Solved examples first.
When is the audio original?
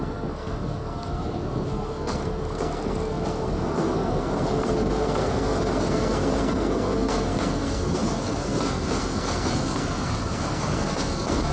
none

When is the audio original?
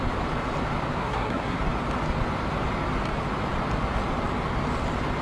0.0-1.0; 1.6-5.2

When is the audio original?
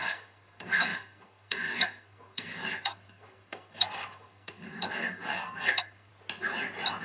6.1-7.0